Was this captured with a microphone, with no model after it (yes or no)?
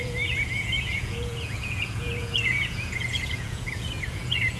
no